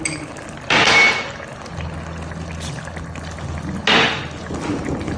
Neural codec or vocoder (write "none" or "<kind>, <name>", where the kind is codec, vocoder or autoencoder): none